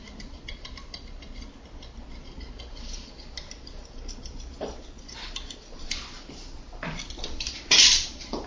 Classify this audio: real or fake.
real